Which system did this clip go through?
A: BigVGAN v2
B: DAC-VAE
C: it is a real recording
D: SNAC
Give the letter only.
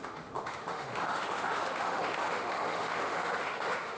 B